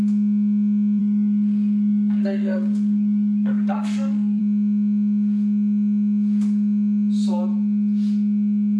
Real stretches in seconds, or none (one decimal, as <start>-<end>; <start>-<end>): 0.0-1.0; 4.4-8.8